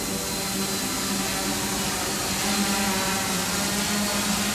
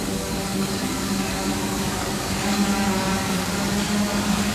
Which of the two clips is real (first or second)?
first